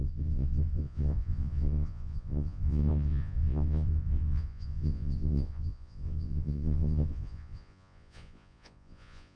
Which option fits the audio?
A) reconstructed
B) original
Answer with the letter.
A